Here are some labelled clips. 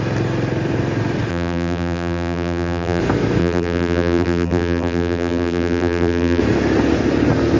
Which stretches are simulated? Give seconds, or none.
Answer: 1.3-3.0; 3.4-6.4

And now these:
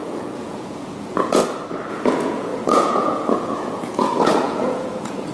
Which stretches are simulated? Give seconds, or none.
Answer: 0.0-1.4; 1.9-5.3

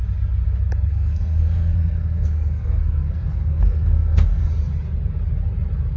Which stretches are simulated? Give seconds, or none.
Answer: 0.9-4.5

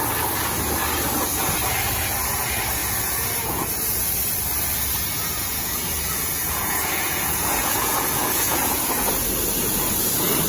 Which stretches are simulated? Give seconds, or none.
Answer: 2.8-4.1; 5.2-8.9

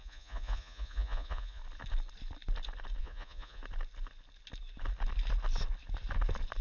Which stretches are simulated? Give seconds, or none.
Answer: 0.0-1.6; 3.0-3.6

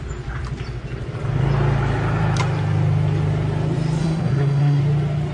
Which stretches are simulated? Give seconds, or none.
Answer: 4.0-4.8

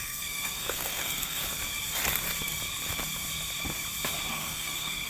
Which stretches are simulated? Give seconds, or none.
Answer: 0.0-1.4; 4.3-5.1